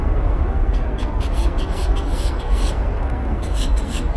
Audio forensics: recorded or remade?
remade